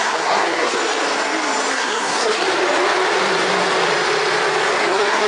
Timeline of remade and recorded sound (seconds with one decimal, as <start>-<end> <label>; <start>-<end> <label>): 0.0-0.8 remade; 0.8-1.7 recorded; 1.7-2.4 remade; 2.4-4.8 recorded; 4.8-5.3 remade